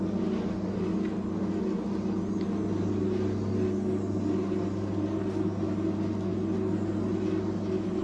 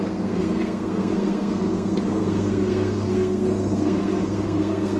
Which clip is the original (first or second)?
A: first